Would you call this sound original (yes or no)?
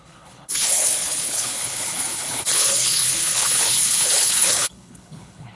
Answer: no